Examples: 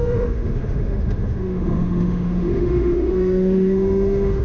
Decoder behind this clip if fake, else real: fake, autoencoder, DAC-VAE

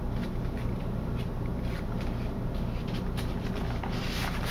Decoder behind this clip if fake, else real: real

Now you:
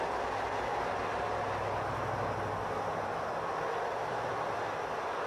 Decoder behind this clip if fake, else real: real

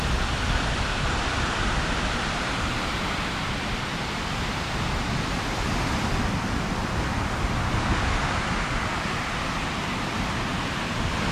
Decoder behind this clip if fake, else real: real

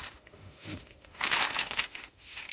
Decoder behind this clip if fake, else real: fake, autoencoder, DAC-VAE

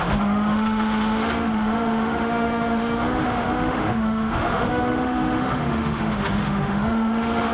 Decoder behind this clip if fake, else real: fake, autoencoder, DAC-VAE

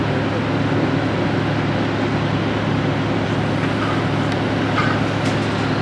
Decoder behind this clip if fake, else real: real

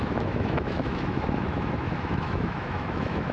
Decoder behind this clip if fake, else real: fake, autoencoder, DAC-VAE